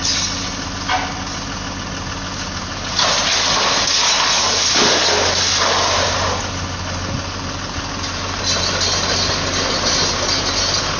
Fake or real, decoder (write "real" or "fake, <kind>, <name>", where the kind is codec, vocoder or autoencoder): real